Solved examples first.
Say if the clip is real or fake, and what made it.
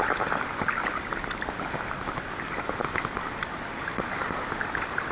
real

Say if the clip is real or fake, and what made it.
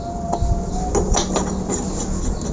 real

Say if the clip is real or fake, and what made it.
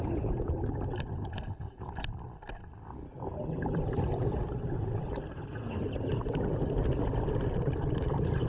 real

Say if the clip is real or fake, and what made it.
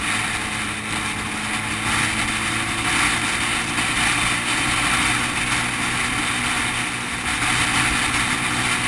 real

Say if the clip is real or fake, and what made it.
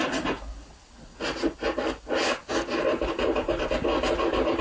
real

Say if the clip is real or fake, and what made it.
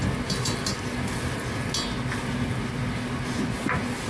real